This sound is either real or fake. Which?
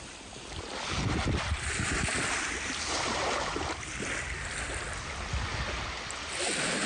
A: real